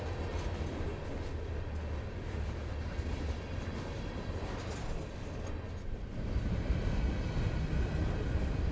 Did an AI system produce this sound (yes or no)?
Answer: no